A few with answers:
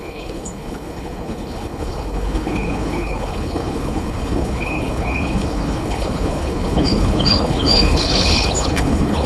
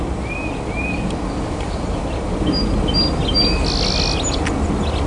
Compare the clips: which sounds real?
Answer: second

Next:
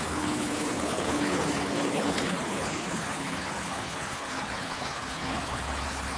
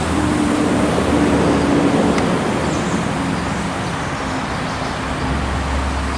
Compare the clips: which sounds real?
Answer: second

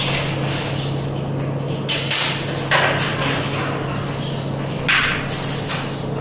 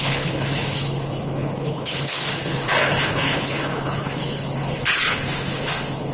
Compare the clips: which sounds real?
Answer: first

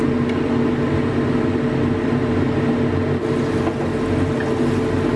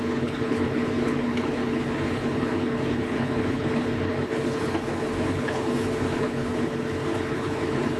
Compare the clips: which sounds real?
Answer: first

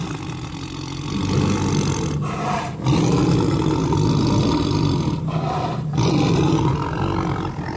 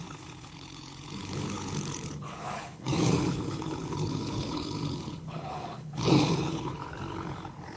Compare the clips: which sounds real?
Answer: first